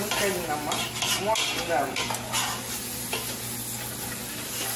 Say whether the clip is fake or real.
real